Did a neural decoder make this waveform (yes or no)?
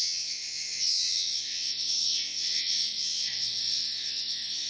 yes